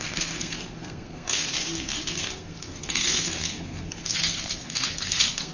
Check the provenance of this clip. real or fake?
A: fake